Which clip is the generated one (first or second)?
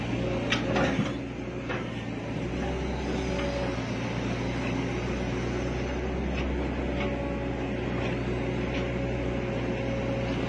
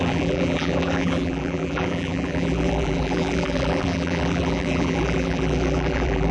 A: second